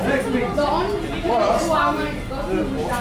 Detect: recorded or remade recorded